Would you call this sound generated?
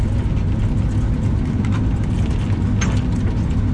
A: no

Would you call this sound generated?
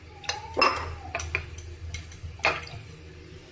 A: no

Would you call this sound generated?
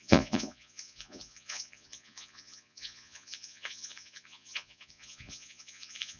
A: yes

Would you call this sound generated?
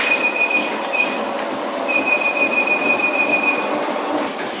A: no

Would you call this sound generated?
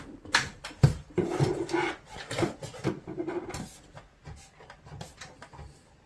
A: no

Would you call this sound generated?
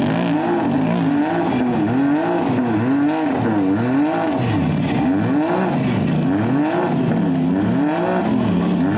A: no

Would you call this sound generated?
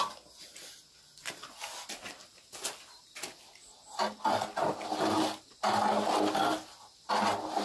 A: no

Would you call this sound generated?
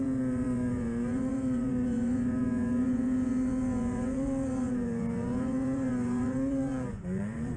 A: yes